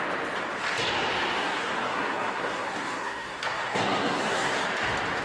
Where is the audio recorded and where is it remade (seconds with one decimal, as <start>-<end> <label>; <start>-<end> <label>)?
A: 0.0-1.4 recorded; 1.4-4.5 remade; 4.5-5.2 recorded